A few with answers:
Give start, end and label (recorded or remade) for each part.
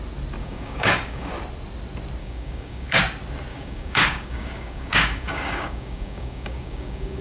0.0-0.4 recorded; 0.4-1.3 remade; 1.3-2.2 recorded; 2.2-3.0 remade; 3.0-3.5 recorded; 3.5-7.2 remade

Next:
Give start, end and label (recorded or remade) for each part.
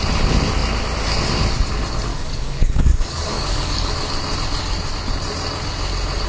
0.0-2.1 recorded; 2.1-3.9 remade; 3.9-6.3 recorded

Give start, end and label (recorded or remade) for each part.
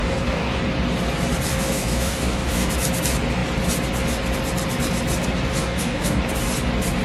0.0-0.6 remade; 0.6-1.5 recorded; 1.5-2.7 remade; 2.7-5.6 recorded; 5.6-6.2 remade; 6.2-7.0 recorded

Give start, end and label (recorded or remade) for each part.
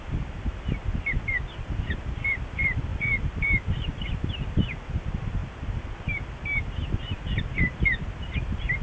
0.0-8.8 recorded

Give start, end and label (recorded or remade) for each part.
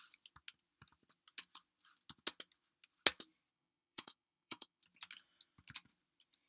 0.0-3.5 recorded; 3.5-4.8 remade; 4.8-6.5 recorded